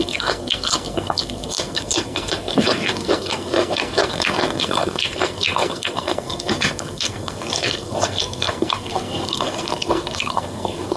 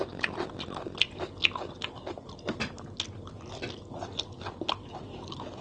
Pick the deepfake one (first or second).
first